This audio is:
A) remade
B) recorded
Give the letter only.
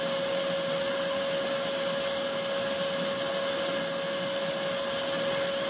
B